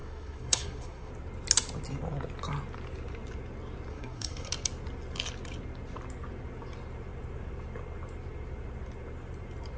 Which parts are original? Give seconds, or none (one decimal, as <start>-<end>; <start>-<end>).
1.1-3.9; 4.5-9.8